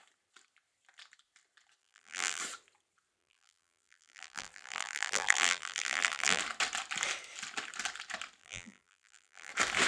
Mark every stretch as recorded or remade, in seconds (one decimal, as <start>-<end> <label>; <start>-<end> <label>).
0.0-1.8 recorded; 1.8-2.4 remade; 2.4-3.2 recorded; 3.2-6.4 remade; 6.4-8.4 recorded; 8.4-9.5 remade; 9.5-9.9 recorded